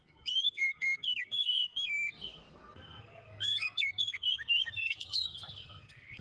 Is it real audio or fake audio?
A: fake